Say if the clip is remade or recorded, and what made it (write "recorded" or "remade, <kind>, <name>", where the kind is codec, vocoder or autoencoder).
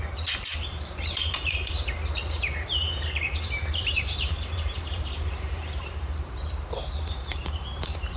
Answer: remade, vocoder, BigVGAN v2